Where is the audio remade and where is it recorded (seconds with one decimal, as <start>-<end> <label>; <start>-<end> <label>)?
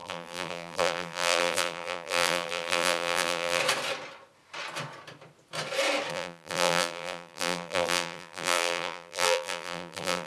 0.0-3.6 remade; 3.6-6.1 recorded; 6.1-10.3 remade